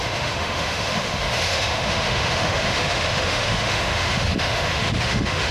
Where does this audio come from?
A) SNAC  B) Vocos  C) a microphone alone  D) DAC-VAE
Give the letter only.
D